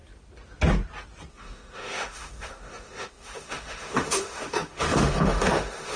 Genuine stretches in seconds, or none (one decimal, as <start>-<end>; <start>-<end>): 0.0-1.3